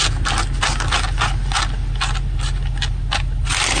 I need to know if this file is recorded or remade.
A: recorded